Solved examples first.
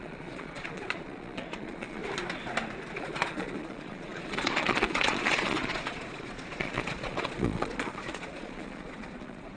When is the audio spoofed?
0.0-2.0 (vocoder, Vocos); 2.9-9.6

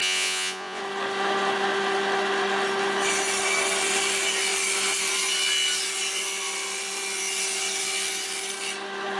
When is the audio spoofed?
0.0-0.8 (vocoder, Vocos)